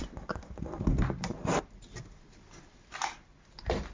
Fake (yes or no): no